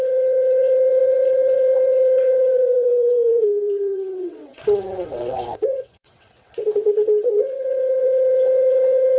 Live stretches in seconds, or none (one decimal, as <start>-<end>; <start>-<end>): none